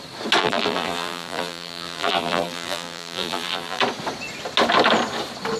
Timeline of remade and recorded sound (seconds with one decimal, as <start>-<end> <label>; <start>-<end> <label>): 0.0-0.4 recorded; 0.4-3.8 remade; 3.8-5.6 recorded